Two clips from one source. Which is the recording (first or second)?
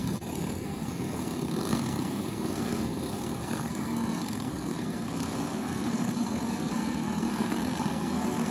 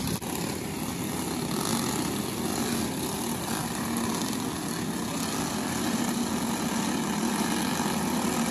second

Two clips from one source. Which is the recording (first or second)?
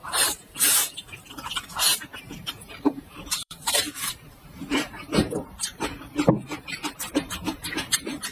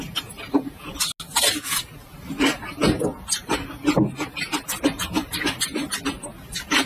second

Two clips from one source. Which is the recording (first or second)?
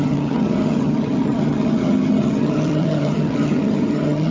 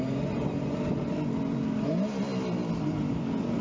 second